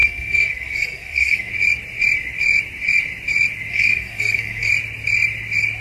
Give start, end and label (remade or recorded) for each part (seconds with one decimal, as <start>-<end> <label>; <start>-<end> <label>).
0.0-1.5 remade; 1.5-3.7 recorded; 3.7-4.7 remade; 4.7-5.8 recorded